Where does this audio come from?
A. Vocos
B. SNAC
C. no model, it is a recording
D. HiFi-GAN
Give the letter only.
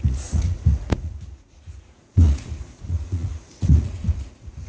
A